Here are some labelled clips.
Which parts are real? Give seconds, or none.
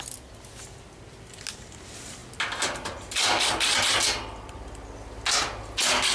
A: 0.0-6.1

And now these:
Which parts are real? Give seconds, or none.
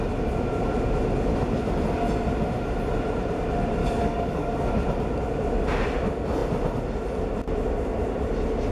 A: 0.0-3.8; 4.7-8.7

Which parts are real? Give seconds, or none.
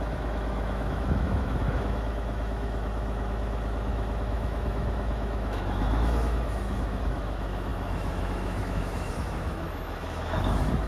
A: none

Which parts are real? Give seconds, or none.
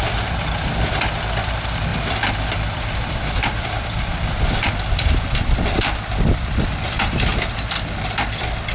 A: none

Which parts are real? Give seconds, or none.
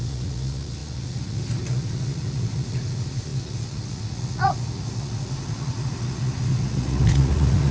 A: none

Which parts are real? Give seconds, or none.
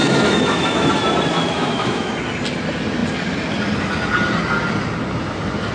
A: 0.9-1.3; 2.1-5.7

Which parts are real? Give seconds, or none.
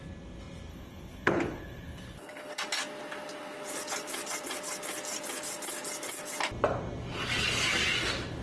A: 0.0-0.7; 2.5-8.4